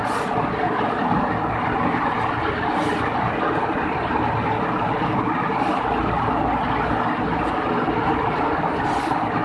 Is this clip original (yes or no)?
yes